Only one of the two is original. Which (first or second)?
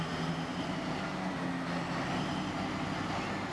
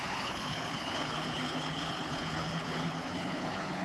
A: first